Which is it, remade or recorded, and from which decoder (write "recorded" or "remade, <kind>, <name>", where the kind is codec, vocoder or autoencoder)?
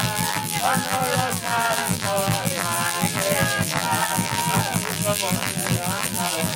remade, vocoder, BigVGAN v2